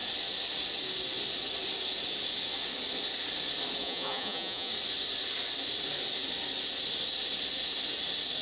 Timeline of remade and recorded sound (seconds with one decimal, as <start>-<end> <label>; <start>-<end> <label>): 0.0-3.8 recorded; 3.8-4.7 remade; 4.7-8.4 recorded